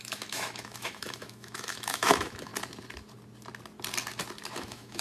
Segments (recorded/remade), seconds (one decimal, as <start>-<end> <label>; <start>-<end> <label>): 0.0-2.5 remade; 2.5-4.5 recorded; 4.5-5.0 remade